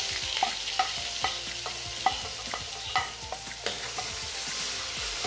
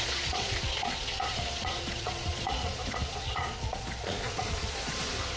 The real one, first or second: first